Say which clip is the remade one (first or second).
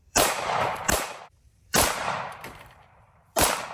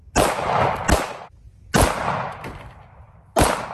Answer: first